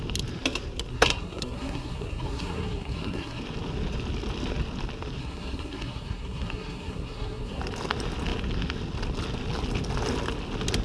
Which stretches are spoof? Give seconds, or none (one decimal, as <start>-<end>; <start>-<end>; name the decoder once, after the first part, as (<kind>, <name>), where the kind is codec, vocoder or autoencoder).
0.9-3.4 (codec, SNAC); 5.2-7.6